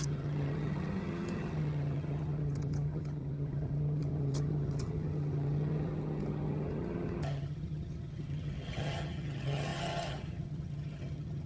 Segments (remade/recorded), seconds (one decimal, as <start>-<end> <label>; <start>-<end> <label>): 0.0-11.5 remade